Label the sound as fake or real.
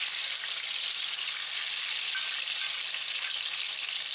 real